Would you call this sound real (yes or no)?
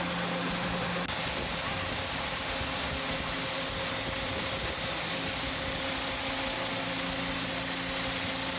yes